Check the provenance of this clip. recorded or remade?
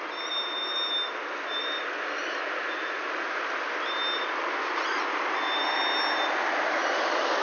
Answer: recorded